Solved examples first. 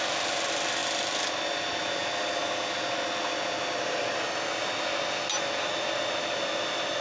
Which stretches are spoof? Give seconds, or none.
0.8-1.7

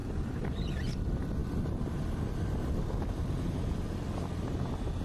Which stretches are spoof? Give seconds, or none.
0.0-0.7

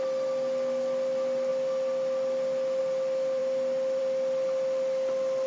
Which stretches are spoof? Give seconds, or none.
none

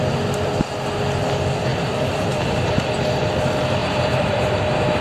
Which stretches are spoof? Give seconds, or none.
1.7-2.9; 3.8-4.5